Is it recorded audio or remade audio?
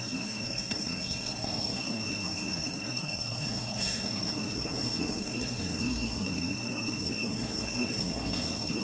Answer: remade